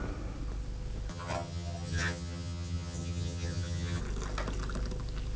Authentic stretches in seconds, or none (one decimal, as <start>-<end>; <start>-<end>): 0.0-1.1; 4.0-5.4